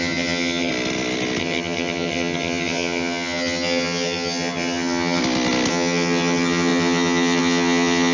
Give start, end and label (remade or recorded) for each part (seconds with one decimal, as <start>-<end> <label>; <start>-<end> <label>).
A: 0.0-0.7 remade; 0.7-1.4 recorded; 1.4-5.2 remade; 5.2-5.7 recorded; 5.7-8.1 remade